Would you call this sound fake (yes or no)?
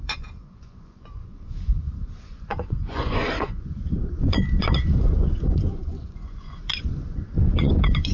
yes